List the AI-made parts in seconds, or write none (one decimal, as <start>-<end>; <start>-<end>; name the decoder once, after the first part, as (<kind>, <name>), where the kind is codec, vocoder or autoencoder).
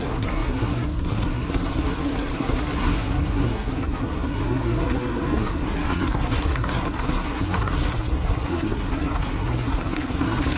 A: 0.0-10.6 (codec, SNAC)